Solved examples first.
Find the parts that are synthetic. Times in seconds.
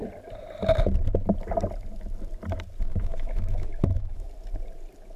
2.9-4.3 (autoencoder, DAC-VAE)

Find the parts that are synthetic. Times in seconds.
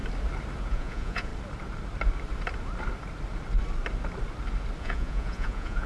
0.6-1.3 (vocoder, Vocos); 4.8-5.9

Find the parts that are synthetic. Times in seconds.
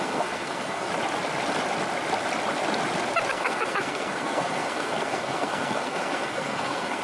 0.0-0.9 (codec, SNAC); 3.3-7.0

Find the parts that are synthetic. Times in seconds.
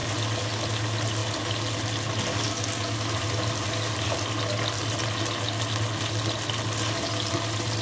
none